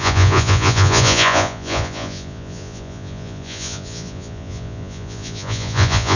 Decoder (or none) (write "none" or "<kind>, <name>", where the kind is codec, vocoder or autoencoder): vocoder, Vocos